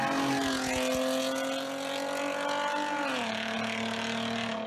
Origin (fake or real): real